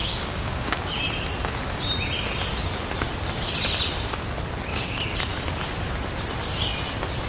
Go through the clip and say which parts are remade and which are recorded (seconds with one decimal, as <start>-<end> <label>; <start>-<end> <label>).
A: 0.0-0.9 remade; 0.9-4.7 recorded; 4.7-5.2 remade; 5.2-7.3 recorded